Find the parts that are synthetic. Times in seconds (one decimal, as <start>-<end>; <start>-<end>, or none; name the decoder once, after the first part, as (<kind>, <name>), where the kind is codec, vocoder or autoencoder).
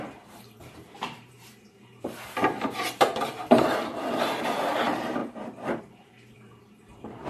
0.0-5.2 (vocoder, BigVGAN v2); 5.8-7.3